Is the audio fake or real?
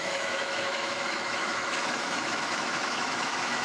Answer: fake